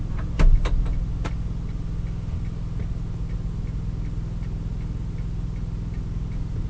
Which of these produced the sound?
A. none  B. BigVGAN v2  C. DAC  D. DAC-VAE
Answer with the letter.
A